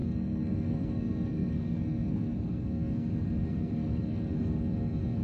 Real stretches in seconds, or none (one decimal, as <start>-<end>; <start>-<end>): none